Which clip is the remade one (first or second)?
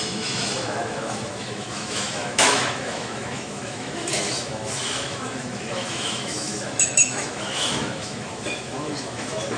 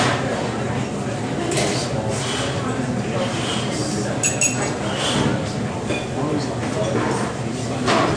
first